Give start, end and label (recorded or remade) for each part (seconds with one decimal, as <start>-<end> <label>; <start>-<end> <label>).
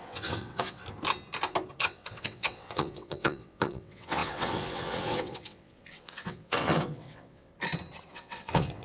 0.0-0.8 remade; 0.8-1.8 recorded; 1.8-7.5 remade; 7.5-8.1 recorded; 8.1-8.8 remade